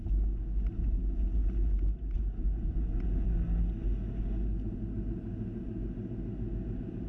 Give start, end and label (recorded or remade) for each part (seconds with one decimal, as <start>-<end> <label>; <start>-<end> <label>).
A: 0.0-7.1 recorded